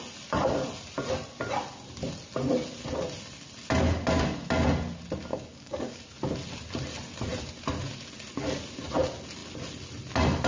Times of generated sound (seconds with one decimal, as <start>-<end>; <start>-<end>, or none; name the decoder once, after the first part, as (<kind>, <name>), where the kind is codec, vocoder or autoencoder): 5.3-6.0 (codec, DAC)